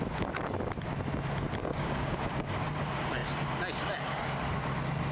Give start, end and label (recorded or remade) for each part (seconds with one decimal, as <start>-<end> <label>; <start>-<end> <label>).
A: 0.0-1.6 recorded; 1.6-2.7 remade; 2.7-5.1 recorded